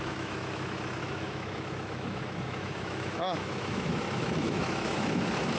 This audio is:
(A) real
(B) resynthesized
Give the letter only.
B